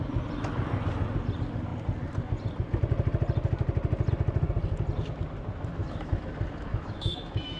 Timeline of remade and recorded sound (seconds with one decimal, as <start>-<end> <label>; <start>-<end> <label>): 0.0-5.8 recorded; 5.8-6.3 remade; 6.3-6.7 recorded; 6.7-7.6 remade